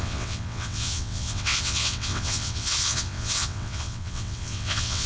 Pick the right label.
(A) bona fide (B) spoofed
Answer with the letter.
B